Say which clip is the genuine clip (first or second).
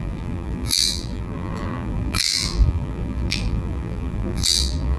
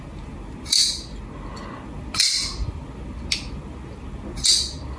second